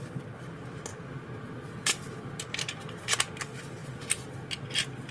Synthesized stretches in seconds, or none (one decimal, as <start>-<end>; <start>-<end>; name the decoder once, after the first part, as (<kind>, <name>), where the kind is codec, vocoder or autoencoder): none